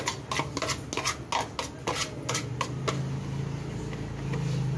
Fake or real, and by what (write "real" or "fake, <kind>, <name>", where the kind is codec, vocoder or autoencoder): real